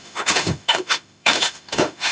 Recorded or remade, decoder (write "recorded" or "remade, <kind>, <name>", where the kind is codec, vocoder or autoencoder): remade, autoencoder, DAC-VAE